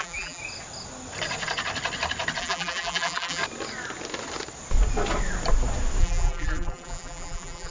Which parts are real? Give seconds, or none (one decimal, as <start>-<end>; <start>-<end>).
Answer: 0.4-2.4; 3.4-6.0